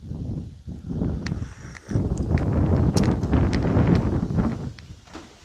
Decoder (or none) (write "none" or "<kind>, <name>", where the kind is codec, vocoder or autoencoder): none